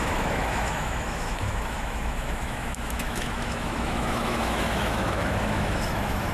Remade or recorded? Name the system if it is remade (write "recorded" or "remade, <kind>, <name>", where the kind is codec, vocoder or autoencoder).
remade, autoencoder, DAC-VAE